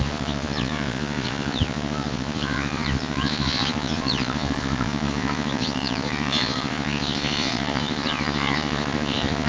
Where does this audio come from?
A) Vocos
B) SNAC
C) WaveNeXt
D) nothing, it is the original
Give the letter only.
A